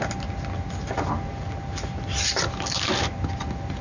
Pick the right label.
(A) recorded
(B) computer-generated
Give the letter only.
A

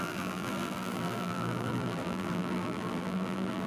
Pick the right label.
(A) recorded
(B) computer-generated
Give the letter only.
B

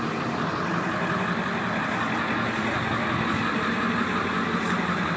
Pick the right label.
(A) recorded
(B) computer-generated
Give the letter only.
A